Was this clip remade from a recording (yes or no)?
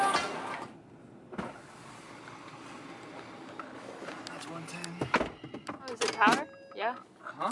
no